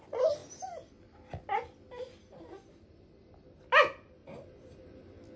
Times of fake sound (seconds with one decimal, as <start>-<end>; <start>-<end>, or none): 4.2-5.0